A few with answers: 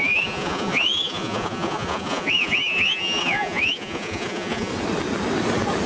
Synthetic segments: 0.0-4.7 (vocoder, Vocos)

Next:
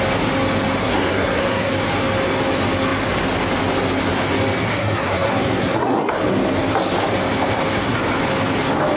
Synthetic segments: 0.8-1.7 (codec, SNAC); 4.7-6.1

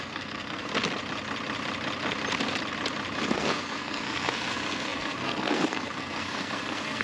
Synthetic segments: 0.0-0.7 (codec, SNAC); 3.3-7.0

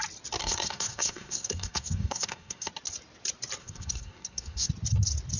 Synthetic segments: 0.4-2.7 (codec, SNAC); 3.6-4.7

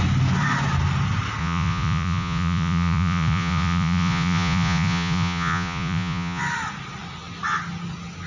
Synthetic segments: 1.4-6.4 (vocoder, Vocos)

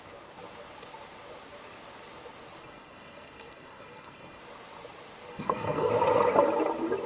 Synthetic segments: 2.6-4.4 (codec, SNAC); 5.3-5.9

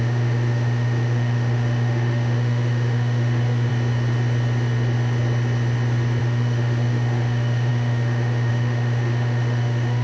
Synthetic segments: 0.0-3.7 (autoencoder, DAC-VAE); 6.2-10.0

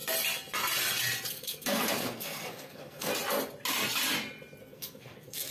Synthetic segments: 1.3-3.1 (codec, SNAC); 4.6-5.5